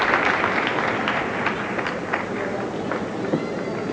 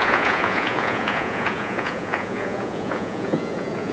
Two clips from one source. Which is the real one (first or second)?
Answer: first